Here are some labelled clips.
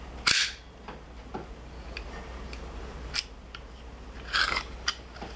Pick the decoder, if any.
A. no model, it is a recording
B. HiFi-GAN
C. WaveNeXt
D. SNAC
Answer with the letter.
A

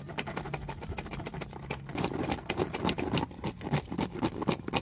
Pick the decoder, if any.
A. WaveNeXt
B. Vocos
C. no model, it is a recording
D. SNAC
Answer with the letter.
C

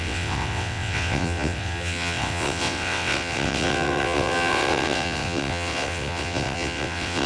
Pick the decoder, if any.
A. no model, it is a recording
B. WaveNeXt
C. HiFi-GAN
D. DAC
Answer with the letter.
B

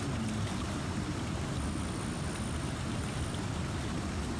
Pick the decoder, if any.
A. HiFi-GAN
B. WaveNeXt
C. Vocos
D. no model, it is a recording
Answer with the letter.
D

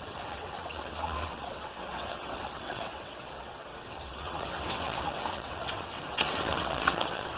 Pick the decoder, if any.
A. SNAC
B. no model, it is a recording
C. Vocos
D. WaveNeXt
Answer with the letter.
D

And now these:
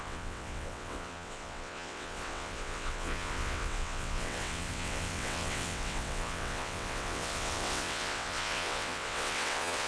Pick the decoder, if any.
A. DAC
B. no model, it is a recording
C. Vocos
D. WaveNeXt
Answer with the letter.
D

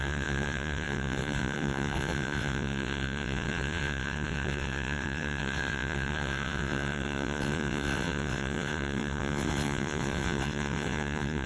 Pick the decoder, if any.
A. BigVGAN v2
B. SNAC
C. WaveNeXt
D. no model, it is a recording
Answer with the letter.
C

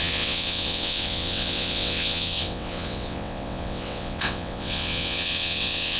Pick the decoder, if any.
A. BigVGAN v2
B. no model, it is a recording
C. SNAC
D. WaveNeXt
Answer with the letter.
D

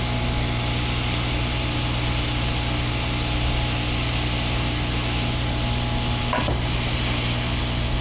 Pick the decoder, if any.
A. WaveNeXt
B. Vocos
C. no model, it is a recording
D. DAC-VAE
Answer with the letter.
C